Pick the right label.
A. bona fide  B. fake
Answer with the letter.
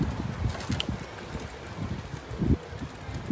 A